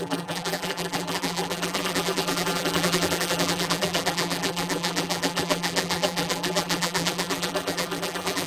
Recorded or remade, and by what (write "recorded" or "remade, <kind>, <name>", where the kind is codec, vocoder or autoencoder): remade, vocoder, BigVGAN v2